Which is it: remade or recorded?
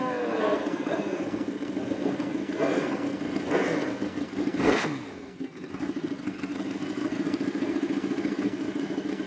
remade